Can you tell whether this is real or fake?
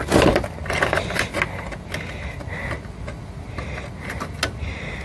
real